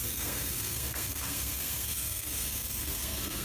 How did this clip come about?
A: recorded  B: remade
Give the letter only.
B